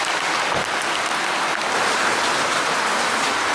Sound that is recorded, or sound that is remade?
recorded